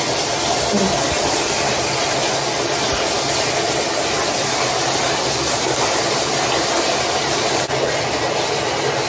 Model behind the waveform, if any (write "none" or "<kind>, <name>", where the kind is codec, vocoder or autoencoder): none